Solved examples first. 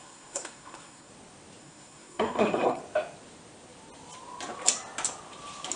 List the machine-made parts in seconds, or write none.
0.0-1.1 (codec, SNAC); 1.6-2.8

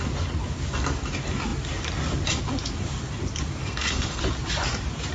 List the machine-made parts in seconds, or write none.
3.6-4.2 (codec, SNAC)

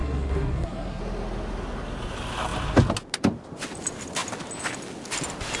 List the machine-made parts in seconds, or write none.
0.0-1.0 (codec, SNAC)